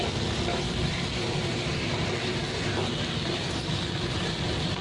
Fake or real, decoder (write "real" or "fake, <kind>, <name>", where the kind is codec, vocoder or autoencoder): real